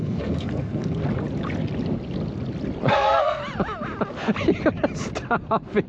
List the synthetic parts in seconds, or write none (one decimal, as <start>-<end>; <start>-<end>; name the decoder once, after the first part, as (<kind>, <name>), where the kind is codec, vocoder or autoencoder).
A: 0.0-1.0 (codec, SNAC); 2.9-3.4